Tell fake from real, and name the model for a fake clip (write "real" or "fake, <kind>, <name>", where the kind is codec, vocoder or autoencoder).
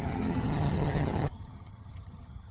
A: fake, vocoder, HiFi-GAN